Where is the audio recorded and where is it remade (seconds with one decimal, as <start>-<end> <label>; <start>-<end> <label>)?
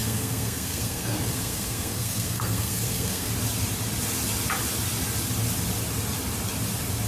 0.0-3.3 remade; 3.3-7.1 recorded